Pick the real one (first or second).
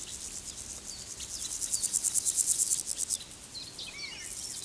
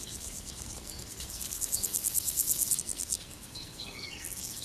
first